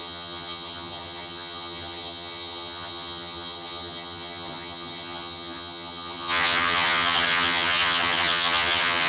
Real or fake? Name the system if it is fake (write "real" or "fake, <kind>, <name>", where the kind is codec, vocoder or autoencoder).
fake, vocoder, HiFi-GAN